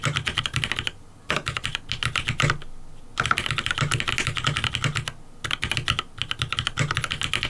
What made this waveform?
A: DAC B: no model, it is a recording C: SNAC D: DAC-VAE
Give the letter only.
B